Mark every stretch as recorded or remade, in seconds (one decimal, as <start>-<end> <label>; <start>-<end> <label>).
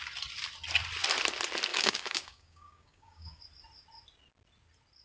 0.0-1.7 recorded; 1.7-3.4 remade; 3.4-5.0 recorded